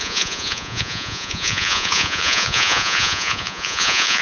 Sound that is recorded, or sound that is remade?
remade